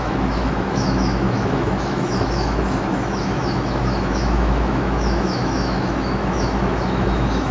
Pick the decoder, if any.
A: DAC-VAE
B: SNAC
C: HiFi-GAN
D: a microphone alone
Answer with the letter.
A